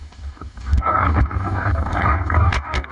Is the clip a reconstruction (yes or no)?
yes